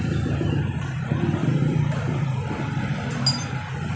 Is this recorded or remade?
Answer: recorded